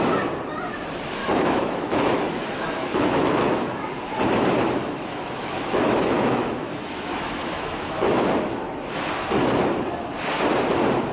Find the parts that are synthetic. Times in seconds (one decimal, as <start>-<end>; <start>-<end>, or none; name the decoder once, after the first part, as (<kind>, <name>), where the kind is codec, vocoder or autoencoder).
1.2-3.8 (autoencoder, DAC-VAE); 4.8-8.2